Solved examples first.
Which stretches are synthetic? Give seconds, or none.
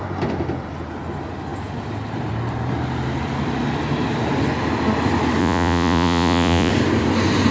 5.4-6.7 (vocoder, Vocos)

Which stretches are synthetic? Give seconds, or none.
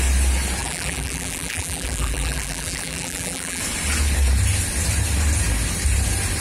0.6-3.6 (vocoder, BigVGAN v2)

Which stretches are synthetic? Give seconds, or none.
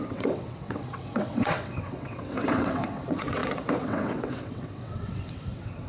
0.0-5.9 (vocoder, WaveNeXt)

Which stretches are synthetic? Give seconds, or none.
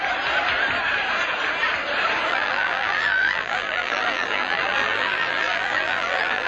2.3-6.5 (vocoder, BigVGAN v2)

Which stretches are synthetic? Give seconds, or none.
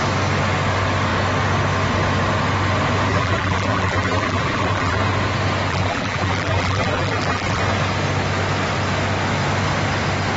3.1-5.0 (vocoder, BigVGAN v2); 5.7-7.6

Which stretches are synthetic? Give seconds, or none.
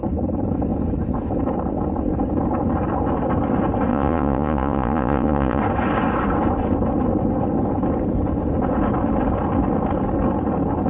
3.9-5.6 (vocoder, Vocos)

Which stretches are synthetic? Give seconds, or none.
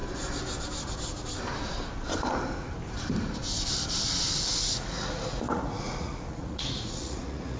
4.6-7.6 (vocoder, Vocos)